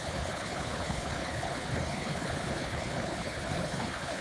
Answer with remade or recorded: remade